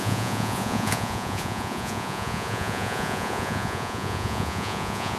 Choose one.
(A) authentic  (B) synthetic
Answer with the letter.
B